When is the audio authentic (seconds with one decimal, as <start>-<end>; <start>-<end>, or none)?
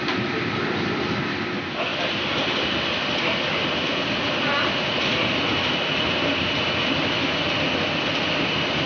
0.0-8.9